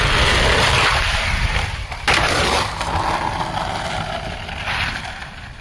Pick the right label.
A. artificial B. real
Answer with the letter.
B